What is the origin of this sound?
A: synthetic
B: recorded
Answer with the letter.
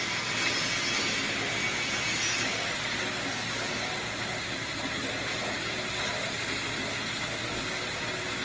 B